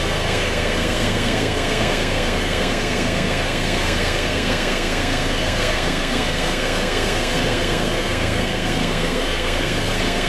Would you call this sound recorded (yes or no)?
no